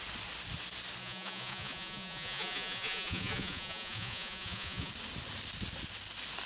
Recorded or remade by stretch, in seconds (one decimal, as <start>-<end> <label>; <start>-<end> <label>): 0.0-1.0 recorded; 1.0-4.9 remade; 4.9-6.5 recorded